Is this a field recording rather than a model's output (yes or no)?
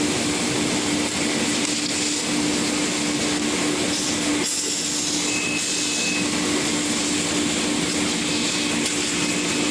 yes